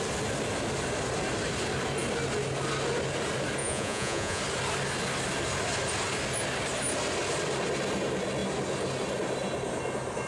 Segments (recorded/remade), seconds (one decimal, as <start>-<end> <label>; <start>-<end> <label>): 0.0-3.6 recorded; 3.6-4.4 remade; 4.4-10.3 recorded